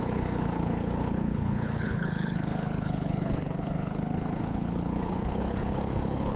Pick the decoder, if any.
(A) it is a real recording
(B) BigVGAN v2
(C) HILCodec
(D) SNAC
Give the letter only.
C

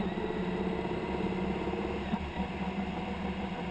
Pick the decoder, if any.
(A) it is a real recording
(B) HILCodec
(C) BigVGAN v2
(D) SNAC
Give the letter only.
A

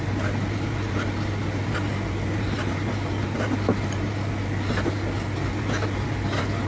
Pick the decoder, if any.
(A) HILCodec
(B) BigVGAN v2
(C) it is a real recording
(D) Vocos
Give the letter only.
C